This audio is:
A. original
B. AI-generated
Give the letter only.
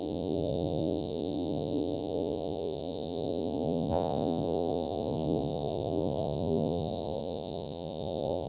B